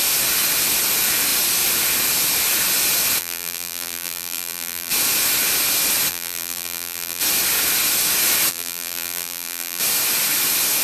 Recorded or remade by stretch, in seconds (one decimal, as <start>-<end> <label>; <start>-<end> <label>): 0.0-3.2 recorded; 3.2-4.9 remade; 4.9-6.1 recorded; 6.1-7.2 remade; 7.2-8.5 recorded; 8.5-9.8 remade; 9.8-10.8 recorded